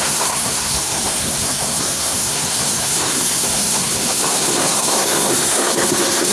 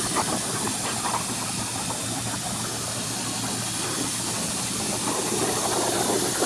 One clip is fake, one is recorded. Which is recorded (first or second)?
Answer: second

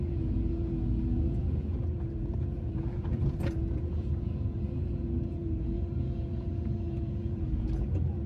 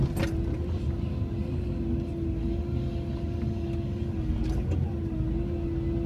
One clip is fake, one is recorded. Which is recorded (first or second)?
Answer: second